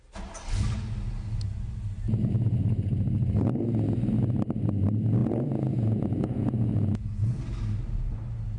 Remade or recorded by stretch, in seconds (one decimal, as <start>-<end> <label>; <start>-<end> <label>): 0.0-5.2 recorded; 5.2-7.4 remade; 7.4-8.6 recorded